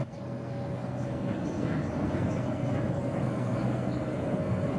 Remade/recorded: remade